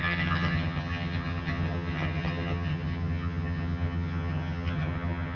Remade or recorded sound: remade